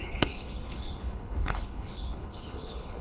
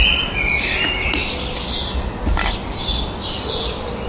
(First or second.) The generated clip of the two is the first